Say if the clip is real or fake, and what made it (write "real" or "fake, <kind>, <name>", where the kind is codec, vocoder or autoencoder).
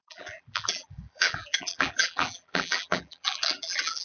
fake, vocoder, BigVGAN v2